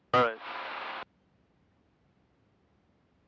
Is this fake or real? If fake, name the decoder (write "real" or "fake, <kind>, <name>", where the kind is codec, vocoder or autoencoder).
real